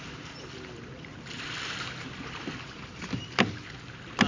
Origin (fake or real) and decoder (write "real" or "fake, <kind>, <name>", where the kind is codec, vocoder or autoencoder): real